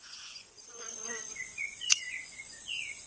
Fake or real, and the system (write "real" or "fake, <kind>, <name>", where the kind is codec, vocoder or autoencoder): fake, vocoder, Vocos